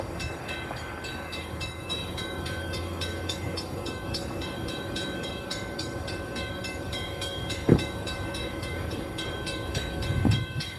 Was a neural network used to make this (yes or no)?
yes